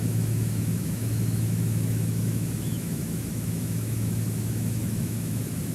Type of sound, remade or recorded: remade